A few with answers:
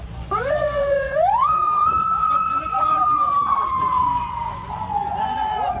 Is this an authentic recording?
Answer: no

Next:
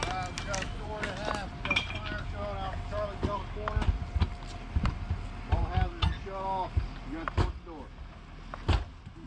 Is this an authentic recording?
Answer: yes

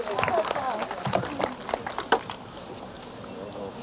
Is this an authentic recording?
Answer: yes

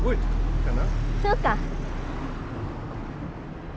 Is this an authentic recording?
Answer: yes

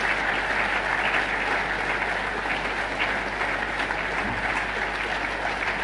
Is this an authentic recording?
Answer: yes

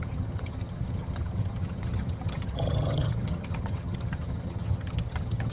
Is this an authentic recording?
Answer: no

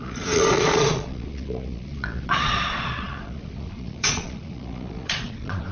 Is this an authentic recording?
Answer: no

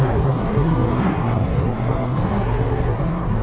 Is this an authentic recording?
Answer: no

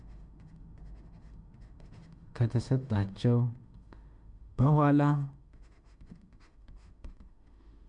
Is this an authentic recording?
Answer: no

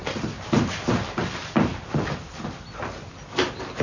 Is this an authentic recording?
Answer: yes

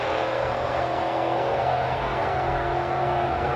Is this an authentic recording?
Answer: no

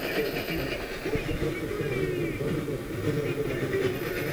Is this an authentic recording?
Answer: yes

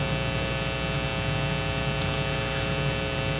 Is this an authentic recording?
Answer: yes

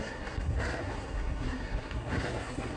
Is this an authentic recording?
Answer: no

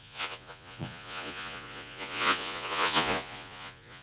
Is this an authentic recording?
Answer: no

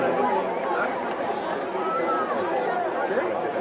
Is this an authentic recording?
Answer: yes